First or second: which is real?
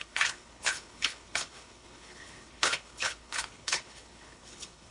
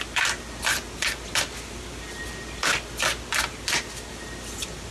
second